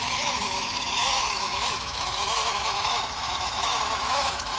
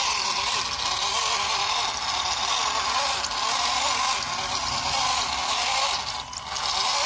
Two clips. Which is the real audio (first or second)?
second